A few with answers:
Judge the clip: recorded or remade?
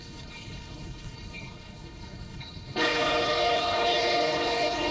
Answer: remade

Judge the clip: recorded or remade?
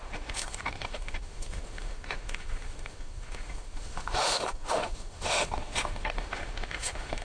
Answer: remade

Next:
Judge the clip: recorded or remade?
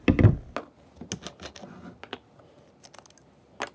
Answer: recorded